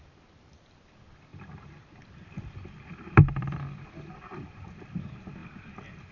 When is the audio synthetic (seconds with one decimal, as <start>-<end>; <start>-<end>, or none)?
0.0-6.1